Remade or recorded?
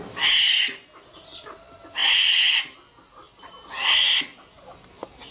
recorded